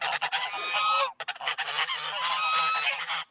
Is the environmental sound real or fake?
real